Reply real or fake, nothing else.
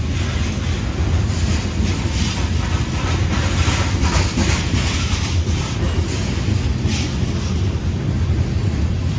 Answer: real